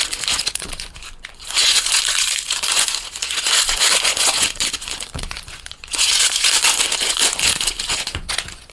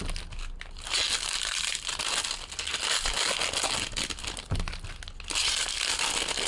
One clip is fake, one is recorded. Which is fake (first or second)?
first